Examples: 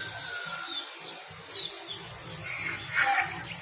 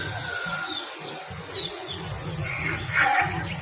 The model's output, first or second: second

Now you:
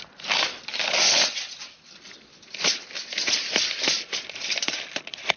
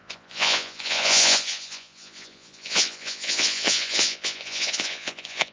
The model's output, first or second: second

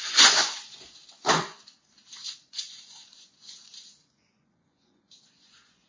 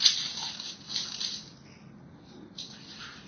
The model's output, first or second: first